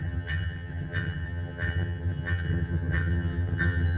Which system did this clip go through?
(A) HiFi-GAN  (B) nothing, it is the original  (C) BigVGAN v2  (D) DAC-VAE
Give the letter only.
A